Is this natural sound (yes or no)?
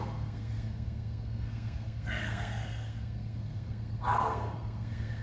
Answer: no